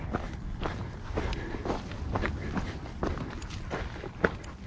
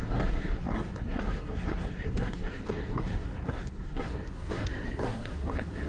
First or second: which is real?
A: first